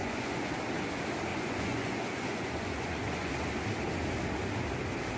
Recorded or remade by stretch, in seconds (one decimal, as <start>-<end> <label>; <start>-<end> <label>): 0.0-0.5 remade; 0.5-1.3 recorded; 1.3-3.3 remade; 3.3-5.2 recorded